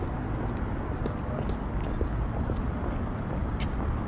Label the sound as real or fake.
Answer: real